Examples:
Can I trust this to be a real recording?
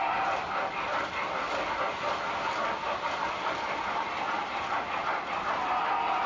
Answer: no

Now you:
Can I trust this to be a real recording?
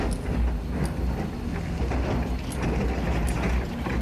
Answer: yes